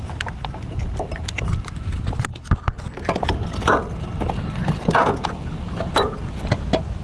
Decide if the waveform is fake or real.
real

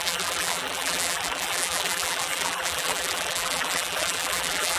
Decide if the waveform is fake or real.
fake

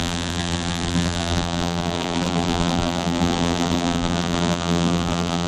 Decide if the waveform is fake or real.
fake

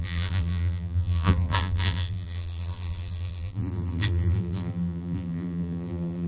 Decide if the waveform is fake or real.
fake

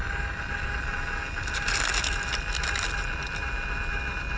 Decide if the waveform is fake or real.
real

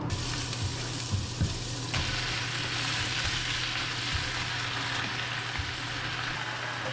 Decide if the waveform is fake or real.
real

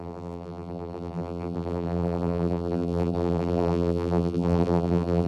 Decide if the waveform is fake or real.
fake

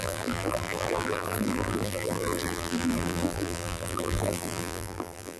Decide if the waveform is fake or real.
fake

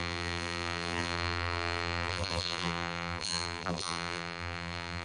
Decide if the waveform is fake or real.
fake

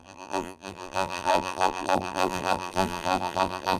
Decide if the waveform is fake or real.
fake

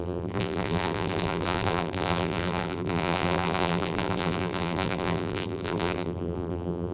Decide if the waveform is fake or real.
fake